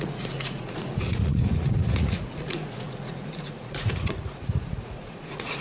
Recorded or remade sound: remade